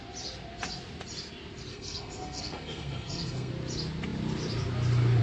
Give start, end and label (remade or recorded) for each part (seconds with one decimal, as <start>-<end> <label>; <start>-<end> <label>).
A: 0.0-1.7 recorded; 1.7-3.5 remade; 3.5-5.2 recorded